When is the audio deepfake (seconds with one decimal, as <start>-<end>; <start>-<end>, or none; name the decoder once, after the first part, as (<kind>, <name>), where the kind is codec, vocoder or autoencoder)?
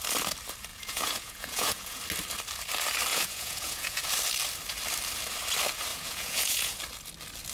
0.7-2.0 (vocoder, Vocos); 3.1-4.0; 5.9-6.8